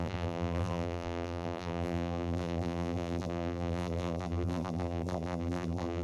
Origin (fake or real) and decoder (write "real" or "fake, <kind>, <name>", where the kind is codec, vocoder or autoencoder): fake, vocoder, BigVGAN v2